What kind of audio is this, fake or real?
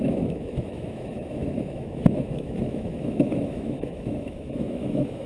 fake